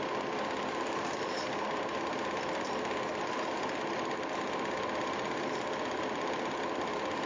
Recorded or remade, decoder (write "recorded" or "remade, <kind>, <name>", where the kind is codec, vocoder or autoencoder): recorded